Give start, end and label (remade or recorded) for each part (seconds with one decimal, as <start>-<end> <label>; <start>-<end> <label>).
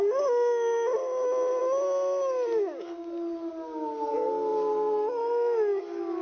0.0-6.2 recorded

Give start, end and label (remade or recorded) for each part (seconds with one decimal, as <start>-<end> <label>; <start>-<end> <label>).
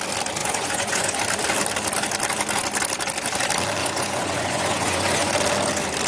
0.0-0.4 recorded; 0.4-1.2 remade; 1.2-3.8 recorded; 3.8-5.3 remade; 5.3-6.1 recorded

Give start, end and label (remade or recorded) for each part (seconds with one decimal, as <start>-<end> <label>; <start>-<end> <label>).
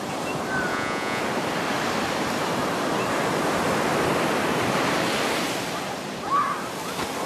0.0-0.7 recorded; 0.7-1.2 remade; 1.2-7.3 recorded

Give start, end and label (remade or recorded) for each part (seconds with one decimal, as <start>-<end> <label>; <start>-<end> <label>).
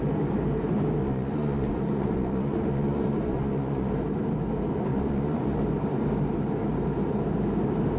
0.0-1.0 recorded; 1.0-3.9 remade; 3.9-4.9 recorded; 4.9-5.6 remade; 5.6-8.0 recorded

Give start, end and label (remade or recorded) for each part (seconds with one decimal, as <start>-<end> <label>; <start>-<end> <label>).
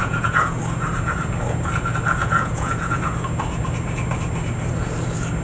0.0-0.6 remade; 0.6-2.2 recorded; 2.2-3.0 remade; 3.0-5.4 recorded